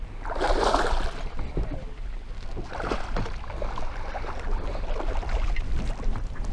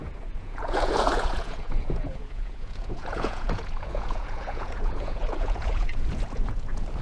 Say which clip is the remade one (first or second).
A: second